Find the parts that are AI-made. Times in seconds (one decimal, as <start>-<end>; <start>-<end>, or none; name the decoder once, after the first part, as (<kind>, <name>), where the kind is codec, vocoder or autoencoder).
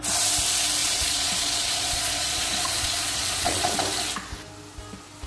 0.8-3.8 (vocoder, Vocos)